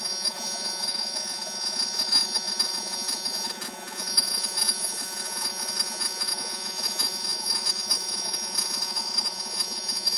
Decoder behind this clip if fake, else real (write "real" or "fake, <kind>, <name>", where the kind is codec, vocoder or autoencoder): fake, vocoder, Vocos